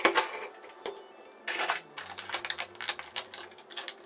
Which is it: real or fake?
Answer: real